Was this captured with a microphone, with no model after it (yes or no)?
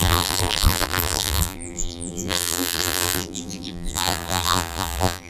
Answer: no